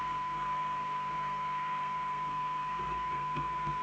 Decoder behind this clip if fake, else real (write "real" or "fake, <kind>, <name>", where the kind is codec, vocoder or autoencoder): fake, codec, SNAC